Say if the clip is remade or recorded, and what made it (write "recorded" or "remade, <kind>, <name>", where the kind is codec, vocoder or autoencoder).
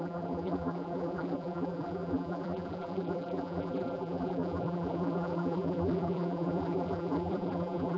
remade, vocoder, BigVGAN v2